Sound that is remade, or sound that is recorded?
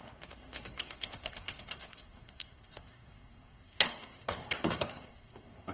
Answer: remade